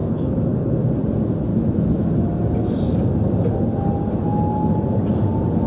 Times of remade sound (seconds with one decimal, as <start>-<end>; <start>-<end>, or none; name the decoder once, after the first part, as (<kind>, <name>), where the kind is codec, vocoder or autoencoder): 0.0-0.5 (autoencoder, DAC-VAE); 1.5-2.1

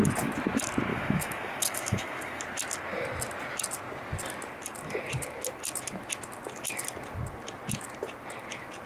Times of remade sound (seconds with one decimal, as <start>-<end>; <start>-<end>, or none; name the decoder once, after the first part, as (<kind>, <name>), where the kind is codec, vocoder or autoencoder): 0.9-2.4 (autoencoder, DAC-VAE)

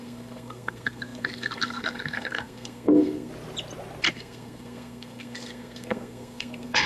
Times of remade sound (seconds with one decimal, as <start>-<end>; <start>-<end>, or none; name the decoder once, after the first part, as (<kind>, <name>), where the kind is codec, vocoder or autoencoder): 0.0-3.3 (codec, SNAC); 4.1-6.9

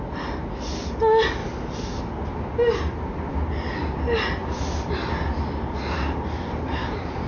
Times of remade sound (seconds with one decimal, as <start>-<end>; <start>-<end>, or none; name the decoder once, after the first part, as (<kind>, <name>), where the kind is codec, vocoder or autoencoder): 1.4-2.0 (vocoder, BigVGAN v2); 4.4-5.0; 6.7-7.3